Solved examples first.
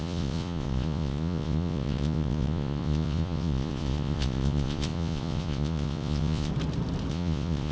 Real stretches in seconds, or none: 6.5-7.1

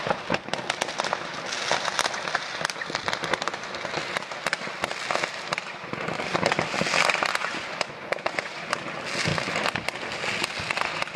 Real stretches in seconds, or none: 0.0-7.4; 8.7-11.2

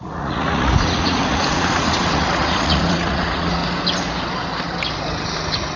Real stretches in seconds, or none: 3.6-5.8

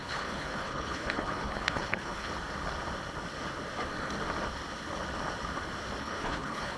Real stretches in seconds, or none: 2.3-6.0

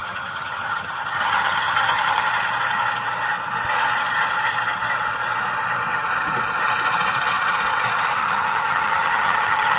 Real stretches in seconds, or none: 2.3-8.2

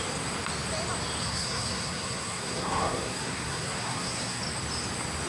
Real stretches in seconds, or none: 0.0-1.2; 4.4-5.3